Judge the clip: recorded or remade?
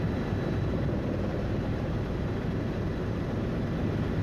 remade